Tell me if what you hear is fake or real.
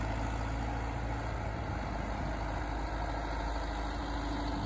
real